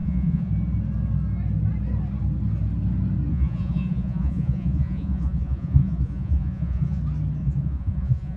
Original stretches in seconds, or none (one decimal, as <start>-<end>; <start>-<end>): 0.5-3.3; 7.0-7.4